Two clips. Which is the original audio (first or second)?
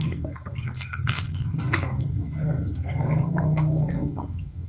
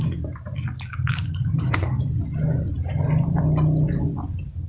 second